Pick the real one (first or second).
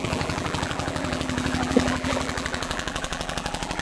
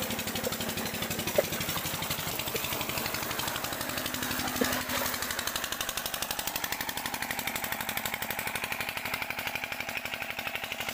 second